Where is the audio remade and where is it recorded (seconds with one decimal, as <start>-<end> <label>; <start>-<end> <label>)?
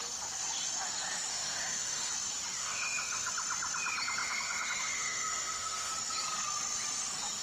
0.0-1.3 recorded; 1.3-2.1 remade; 2.1-2.6 recorded; 2.6-3.3 remade; 3.3-4.2 recorded; 4.2-5.9 remade; 5.9-7.4 recorded